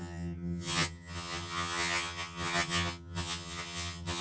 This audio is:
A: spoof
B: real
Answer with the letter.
A